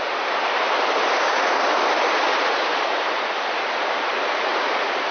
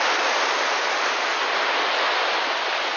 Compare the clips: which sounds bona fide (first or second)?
second